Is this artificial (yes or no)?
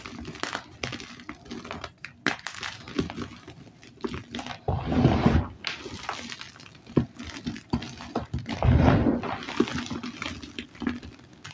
no